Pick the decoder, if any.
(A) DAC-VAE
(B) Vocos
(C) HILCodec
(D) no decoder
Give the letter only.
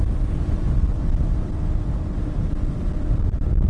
D